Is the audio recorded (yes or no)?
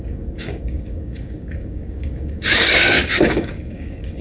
no